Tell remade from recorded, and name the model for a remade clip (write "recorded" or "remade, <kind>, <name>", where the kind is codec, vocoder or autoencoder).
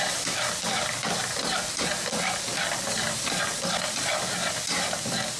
recorded